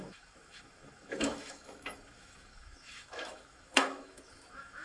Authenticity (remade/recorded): remade